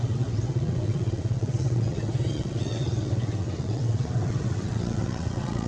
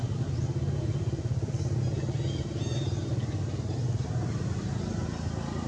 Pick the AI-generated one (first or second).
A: first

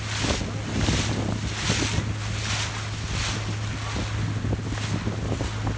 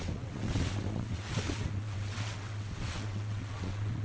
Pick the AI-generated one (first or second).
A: second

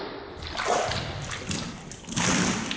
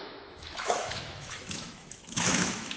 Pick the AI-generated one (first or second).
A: second